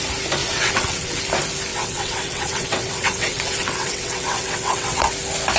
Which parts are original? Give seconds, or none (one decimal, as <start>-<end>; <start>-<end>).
0.0-0.4; 1.2-1.7; 5.1-5.6